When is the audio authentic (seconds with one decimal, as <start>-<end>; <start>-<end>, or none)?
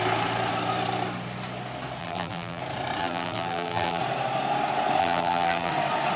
0.0-2.0; 2.6-3.0; 4.0-5.0; 5.7-6.2